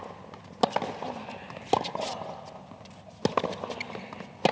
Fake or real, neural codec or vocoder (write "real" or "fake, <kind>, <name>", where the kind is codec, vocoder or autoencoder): real